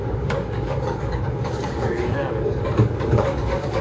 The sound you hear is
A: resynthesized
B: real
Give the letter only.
A